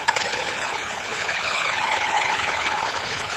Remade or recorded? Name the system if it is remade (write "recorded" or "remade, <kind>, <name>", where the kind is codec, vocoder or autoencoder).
remade, codec, HILCodec